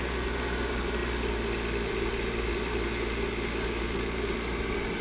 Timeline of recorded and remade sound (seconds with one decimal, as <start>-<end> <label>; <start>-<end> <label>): 0.0-5.0 recorded